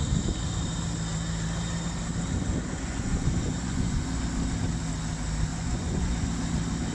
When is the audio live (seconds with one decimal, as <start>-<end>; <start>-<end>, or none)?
0.0-2.4; 4.2-5.5; 6.3-6.9